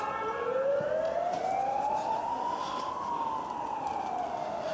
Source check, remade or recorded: recorded